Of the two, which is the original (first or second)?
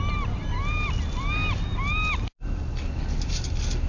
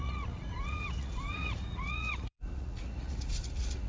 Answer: first